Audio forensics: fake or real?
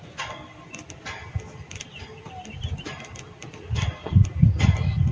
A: real